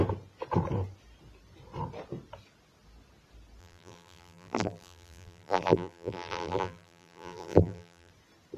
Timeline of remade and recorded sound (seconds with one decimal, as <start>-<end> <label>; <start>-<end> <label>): 0.0-3.6 recorded; 3.6-8.1 remade; 8.1-8.6 recorded